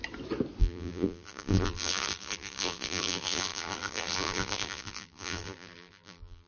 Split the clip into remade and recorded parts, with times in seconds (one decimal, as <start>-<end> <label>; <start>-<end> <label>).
0.0-0.6 recorded; 0.6-6.5 remade